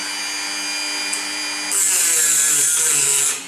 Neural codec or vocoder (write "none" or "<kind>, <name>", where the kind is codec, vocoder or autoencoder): none